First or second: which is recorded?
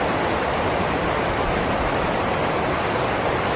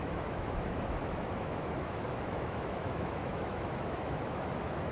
first